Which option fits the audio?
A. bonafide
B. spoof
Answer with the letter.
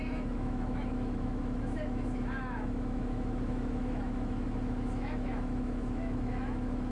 B